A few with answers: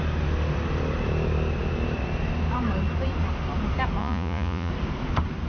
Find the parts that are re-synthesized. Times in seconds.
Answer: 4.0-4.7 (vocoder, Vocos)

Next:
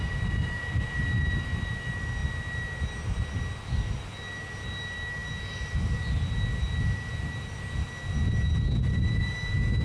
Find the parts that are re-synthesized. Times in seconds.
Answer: none

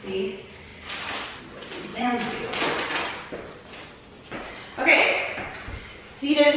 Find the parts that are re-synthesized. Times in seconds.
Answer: 1.9-2.9 (vocoder, Vocos); 4.9-6.6

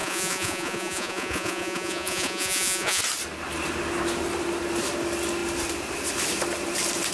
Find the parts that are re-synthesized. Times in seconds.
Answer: 0.0-3.0 (vocoder, Vocos)

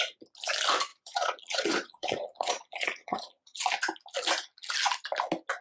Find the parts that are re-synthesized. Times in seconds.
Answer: 0.9-3.7 (vocoder, Vocos)

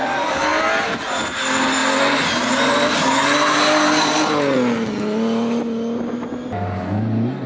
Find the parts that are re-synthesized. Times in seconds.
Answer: none

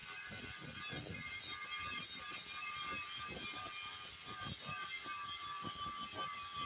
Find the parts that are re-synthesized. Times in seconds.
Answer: none